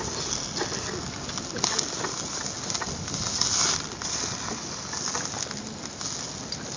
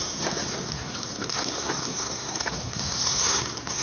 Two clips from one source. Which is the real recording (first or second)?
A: first